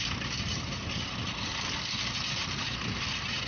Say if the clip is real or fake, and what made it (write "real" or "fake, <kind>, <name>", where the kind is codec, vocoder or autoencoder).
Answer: real